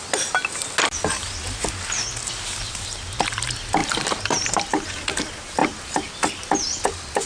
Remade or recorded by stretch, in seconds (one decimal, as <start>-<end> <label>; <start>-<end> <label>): 0.0-3.8 recorded; 3.8-4.5 remade; 4.5-5.6 recorded; 5.6-6.1 remade; 6.1-7.3 recorded